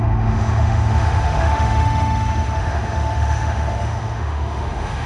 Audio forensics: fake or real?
fake